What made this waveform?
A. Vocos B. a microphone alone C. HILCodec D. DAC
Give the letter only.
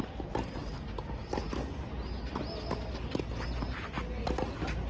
B